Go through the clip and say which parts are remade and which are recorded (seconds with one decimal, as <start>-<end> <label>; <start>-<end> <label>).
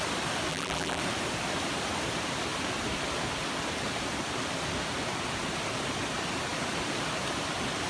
0.0-0.5 recorded; 0.5-1.0 remade; 1.0-7.9 recorded